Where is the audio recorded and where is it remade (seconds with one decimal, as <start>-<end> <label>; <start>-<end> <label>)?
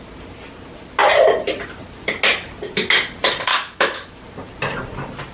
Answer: 0.0-3.5 recorded; 3.5-4.2 remade; 4.2-5.3 recorded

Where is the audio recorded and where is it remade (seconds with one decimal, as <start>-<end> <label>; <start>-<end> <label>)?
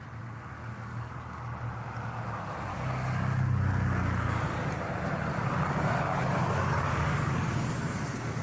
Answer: 0.0-0.5 recorded; 0.5-1.1 remade; 1.1-2.7 recorded; 2.7-4.7 remade; 4.7-5.3 recorded; 5.3-8.4 remade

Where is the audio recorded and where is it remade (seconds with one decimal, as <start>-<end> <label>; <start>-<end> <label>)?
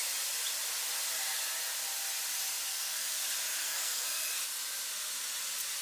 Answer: 0.0-2.7 recorded; 2.7-3.2 remade; 3.2-3.6 recorded; 3.6-4.4 remade; 4.4-5.8 recorded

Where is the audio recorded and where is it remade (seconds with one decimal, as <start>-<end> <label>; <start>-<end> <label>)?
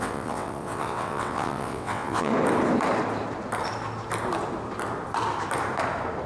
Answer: 0.0-2.3 remade; 2.3-6.3 recorded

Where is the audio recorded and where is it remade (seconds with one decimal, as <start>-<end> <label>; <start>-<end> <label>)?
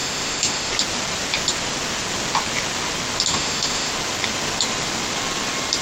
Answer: 0.0-0.7 remade; 0.7-3.3 recorded; 3.3-3.9 remade; 3.9-5.8 recorded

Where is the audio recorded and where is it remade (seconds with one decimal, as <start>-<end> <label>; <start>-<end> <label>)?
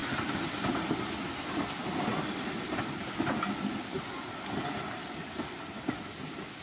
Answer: 0.0-6.6 recorded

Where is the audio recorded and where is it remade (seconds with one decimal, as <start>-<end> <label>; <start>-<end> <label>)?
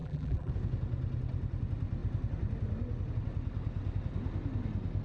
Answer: 0.0-0.5 remade; 0.5-5.0 recorded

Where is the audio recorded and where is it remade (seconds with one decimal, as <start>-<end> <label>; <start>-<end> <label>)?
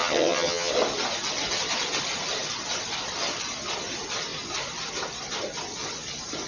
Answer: 0.0-0.7 remade; 0.7-6.5 recorded